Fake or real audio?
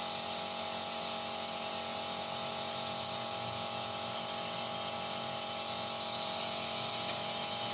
real